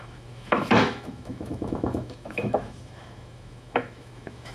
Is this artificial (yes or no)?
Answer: yes